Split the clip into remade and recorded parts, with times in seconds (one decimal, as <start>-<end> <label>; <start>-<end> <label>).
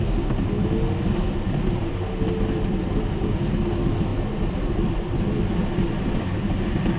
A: 0.0-7.0 recorded